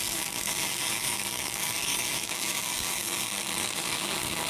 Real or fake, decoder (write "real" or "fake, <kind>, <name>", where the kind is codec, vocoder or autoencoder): fake, codec, DAC